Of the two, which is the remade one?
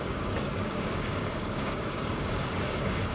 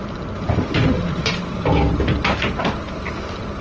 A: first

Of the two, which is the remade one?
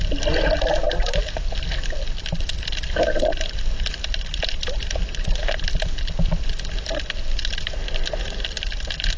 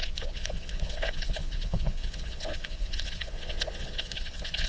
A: second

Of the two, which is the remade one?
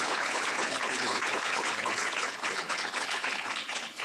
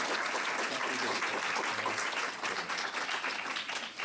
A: first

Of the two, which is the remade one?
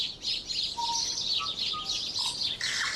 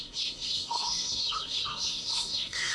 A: second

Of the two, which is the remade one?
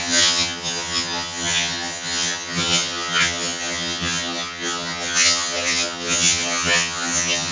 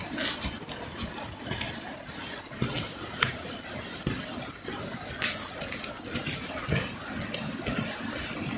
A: first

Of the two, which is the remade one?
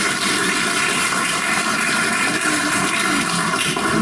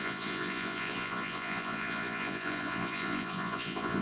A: second